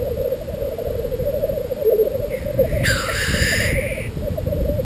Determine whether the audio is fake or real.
real